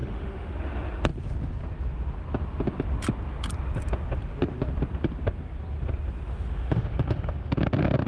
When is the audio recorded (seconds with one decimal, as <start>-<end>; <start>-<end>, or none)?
0.5-6.3; 7.5-8.1